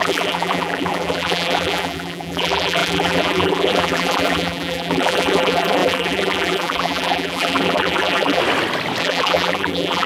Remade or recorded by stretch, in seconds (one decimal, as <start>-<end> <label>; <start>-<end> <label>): 0.0-8.4 remade; 8.4-9.0 recorded; 9.0-10.1 remade